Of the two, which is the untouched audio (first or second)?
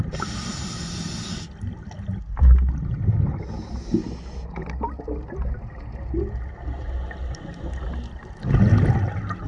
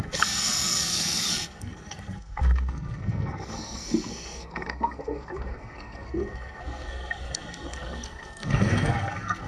first